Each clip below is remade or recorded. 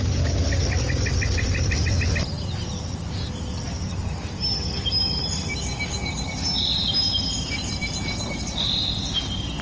recorded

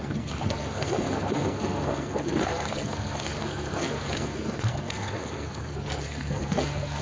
remade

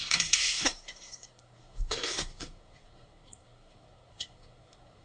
remade